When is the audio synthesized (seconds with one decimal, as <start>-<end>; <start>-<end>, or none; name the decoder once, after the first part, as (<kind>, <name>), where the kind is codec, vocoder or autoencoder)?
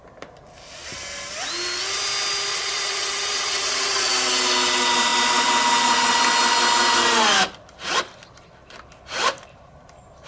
2.5-4.1 (vocoder, WaveNeXt)